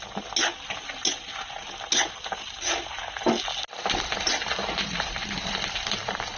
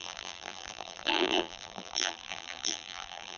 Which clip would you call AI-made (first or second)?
second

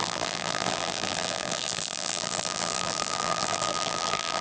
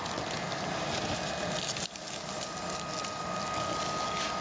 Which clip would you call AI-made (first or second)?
first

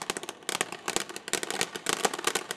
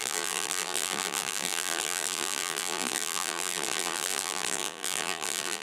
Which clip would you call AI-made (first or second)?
second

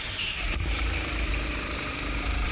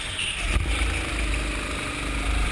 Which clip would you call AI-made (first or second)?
first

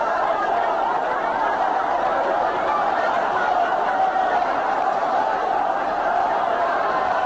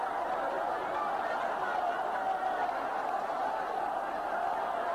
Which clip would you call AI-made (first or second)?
first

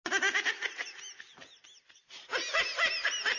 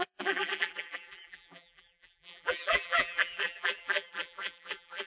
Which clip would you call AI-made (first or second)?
second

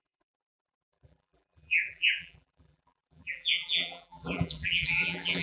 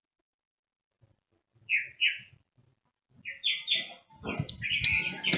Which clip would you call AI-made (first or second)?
first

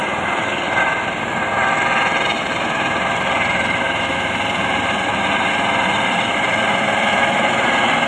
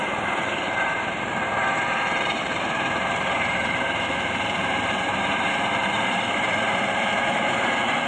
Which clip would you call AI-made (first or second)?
second